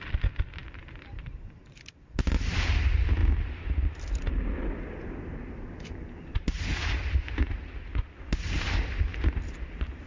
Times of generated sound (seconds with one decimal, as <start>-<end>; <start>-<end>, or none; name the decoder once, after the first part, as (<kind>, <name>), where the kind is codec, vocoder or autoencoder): none